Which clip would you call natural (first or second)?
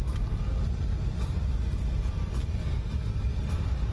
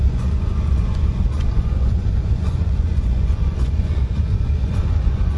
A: first